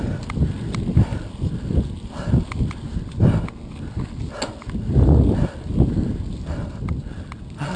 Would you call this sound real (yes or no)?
yes